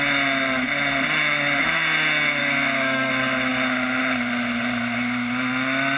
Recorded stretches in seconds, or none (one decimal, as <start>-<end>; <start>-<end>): 0.0-2.4; 3.1-6.0